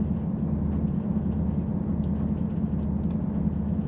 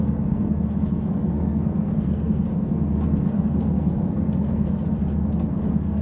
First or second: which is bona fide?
first